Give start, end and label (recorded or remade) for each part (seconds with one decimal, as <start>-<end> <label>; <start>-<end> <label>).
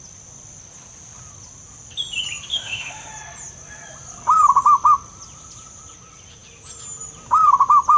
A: 0.0-2.5 recorded; 2.5-3.1 remade; 3.1-8.0 recorded